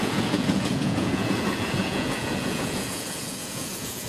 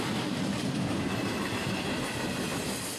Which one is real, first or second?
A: second